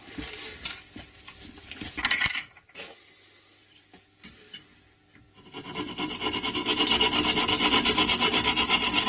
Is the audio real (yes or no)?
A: yes